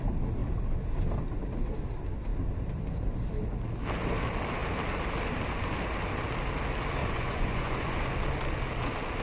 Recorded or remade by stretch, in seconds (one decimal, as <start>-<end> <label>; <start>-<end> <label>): 0.0-7.0 recorded; 7.0-8.0 remade; 8.0-9.2 recorded